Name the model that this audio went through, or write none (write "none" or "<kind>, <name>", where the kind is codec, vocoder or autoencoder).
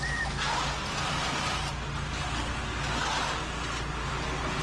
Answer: none